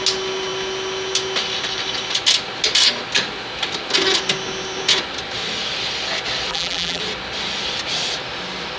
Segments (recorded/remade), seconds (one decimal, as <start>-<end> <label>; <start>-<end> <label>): 0.0-6.5 recorded; 6.5-7.0 remade; 7.0-8.8 recorded